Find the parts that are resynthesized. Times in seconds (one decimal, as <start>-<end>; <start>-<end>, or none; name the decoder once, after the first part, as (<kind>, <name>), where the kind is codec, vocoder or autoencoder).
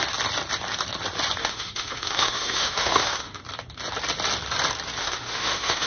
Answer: 1.4-3.4 (autoencoder, DAC-VAE); 5.0-5.9